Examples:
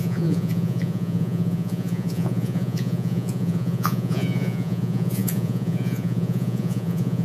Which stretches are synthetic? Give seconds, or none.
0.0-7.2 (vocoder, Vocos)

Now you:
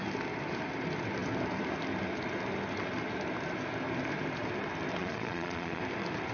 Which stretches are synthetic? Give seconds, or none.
5.0-5.8 (vocoder, Vocos)

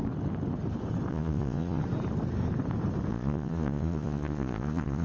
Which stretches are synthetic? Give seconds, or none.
1.1-1.8 (vocoder, Vocos); 3.1-5.0

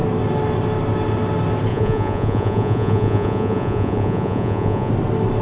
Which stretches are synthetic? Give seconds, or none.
1.7-4.9 (vocoder, Vocos)

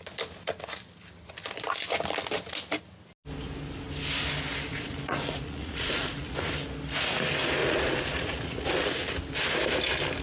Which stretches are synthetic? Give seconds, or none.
4.7-6.5 (vocoder, Vocos); 7.6-8.7

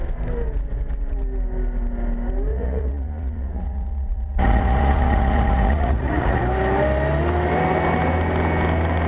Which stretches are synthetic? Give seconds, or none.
2.5-6.4 (vocoder, Vocos)